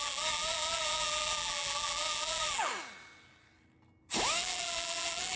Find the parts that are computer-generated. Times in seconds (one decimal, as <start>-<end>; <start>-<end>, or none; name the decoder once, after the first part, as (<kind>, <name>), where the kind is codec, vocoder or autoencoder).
0.0-2.7 (vocoder, BigVGAN v2); 4.4-5.4